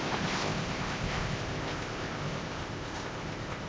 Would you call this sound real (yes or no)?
no